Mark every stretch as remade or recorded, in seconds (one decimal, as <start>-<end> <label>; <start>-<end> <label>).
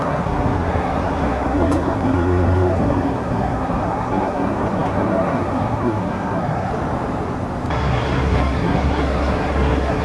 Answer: 0.0-6.7 remade; 6.7-7.7 recorded; 7.7-10.0 remade